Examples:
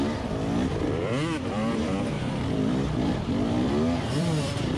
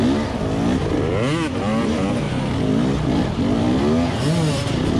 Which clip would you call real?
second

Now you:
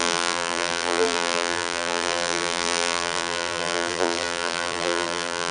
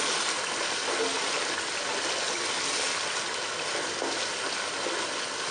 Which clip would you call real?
second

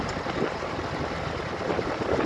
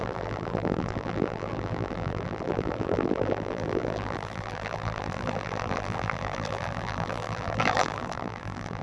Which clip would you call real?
first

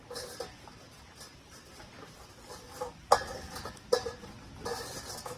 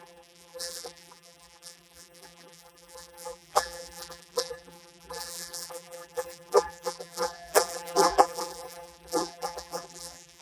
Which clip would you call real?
first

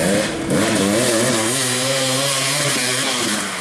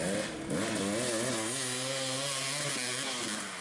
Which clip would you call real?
second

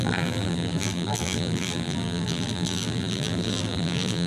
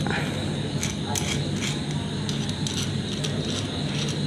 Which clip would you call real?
second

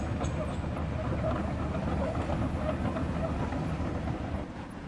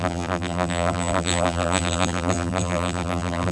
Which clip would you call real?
first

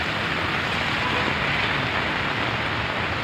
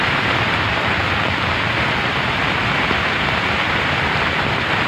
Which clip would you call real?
first